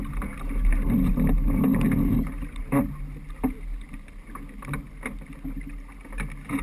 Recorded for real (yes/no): yes